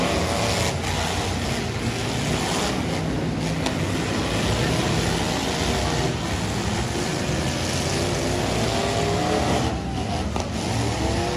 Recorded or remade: recorded